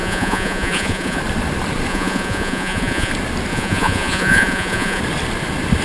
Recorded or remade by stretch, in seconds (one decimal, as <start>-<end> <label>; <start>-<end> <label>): 0.0-1.2 remade; 1.2-1.9 recorded; 1.9-3.1 remade; 3.1-3.5 recorded; 3.5-5.0 remade; 5.0-5.8 recorded